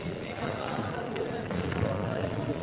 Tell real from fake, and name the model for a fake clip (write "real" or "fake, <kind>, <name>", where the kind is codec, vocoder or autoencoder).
fake, vocoder, Vocos